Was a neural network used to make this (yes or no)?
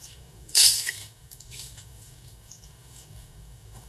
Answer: yes